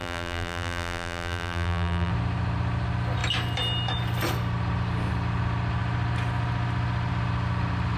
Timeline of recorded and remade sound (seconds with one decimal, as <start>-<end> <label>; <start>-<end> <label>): 0.0-2.1 remade; 2.1-8.0 recorded